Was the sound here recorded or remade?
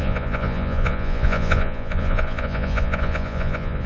remade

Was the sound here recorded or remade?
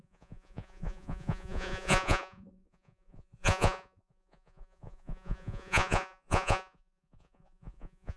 remade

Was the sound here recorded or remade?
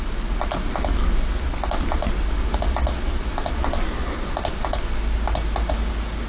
recorded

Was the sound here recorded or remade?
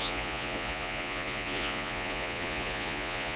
remade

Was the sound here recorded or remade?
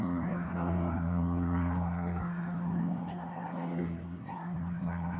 remade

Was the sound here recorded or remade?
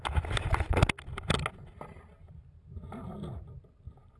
recorded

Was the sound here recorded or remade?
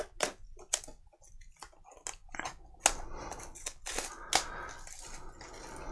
recorded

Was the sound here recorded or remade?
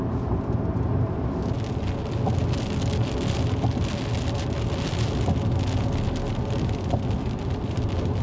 recorded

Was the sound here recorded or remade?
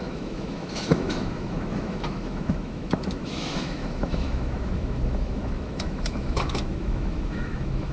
remade